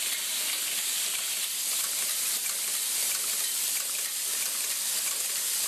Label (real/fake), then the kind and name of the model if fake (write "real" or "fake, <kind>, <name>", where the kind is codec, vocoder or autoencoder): real